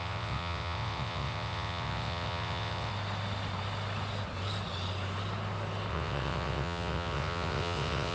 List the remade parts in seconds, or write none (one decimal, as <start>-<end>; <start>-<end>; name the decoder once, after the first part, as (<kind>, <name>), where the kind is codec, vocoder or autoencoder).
0.0-2.9 (vocoder, WaveNeXt); 5.9-8.1